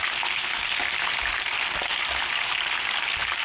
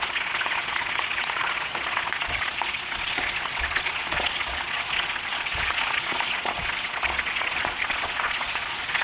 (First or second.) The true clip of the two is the first